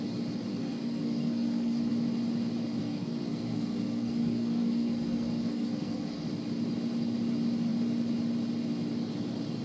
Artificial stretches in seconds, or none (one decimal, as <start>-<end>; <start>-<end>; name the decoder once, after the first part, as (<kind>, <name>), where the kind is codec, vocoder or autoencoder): 0.5-1.9 (codec, SNAC); 2.8-6.3

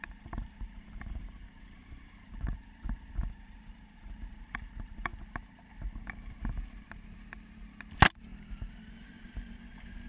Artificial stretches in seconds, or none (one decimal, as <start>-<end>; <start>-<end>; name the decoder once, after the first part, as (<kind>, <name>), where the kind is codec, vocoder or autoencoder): 0.0-5.1 (vocoder, BigVGAN v2)

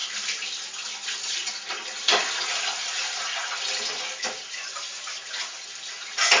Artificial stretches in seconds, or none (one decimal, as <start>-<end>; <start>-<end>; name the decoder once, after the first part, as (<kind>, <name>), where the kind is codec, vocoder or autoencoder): 1.4-5.2 (vocoder, BigVGAN v2)